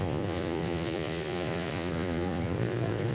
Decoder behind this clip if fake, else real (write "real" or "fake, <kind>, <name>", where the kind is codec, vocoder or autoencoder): fake, vocoder, Vocos